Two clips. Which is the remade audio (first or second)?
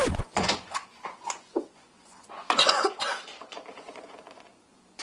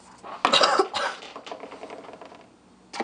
first